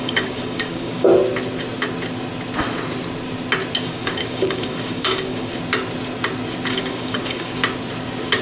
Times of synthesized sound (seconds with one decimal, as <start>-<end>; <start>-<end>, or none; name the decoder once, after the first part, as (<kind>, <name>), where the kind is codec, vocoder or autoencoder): 0.0-1.1 (codec, DAC); 3.8-5.5; 6.7-7.6